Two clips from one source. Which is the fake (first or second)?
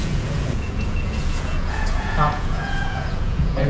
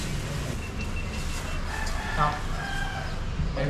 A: first